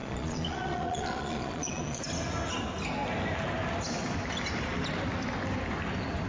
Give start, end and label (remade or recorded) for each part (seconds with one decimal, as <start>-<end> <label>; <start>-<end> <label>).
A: 0.0-2.0 remade; 2.0-6.3 recorded